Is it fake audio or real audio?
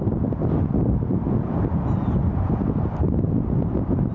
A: real